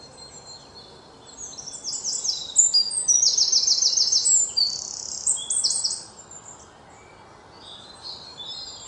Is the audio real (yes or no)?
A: yes